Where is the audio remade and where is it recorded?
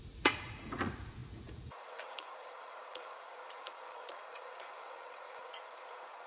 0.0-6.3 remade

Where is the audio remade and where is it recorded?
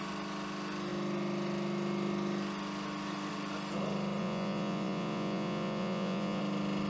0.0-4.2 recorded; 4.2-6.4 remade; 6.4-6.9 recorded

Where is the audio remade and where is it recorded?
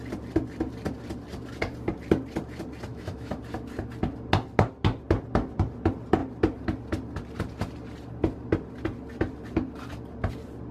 0.0-2.9 recorded; 2.9-3.4 remade; 3.4-10.7 recorded